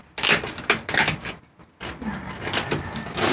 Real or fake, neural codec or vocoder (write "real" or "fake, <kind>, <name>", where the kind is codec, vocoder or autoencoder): real